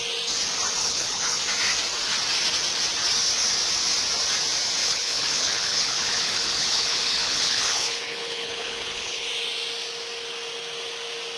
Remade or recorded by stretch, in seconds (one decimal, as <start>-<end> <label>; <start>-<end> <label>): 0.0-0.8 recorded; 0.8-1.4 remade; 1.4-4.8 recorded; 4.8-9.3 remade; 9.3-11.4 recorded